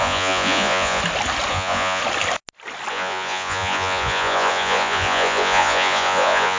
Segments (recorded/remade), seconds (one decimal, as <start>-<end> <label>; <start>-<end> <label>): 0.0-1.0 remade; 1.0-1.5 recorded; 1.5-2.0 remade; 2.0-2.9 recorded; 2.9-6.6 remade